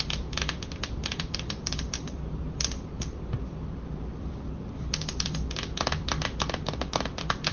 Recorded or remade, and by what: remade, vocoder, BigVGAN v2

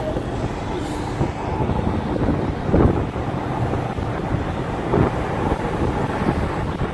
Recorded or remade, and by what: recorded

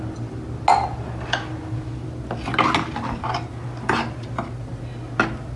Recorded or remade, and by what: recorded